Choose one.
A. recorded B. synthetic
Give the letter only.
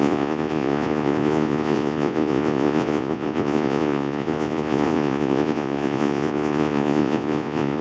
B